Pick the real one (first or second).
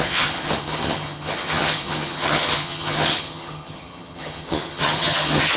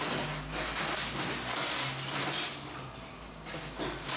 second